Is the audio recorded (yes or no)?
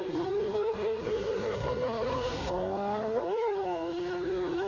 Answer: no